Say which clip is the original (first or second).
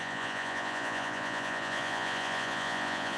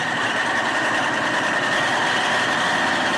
second